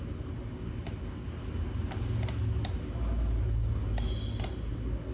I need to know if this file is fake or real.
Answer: real